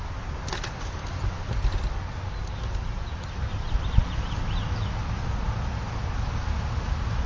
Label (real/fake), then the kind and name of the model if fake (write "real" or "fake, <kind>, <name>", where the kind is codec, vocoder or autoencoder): real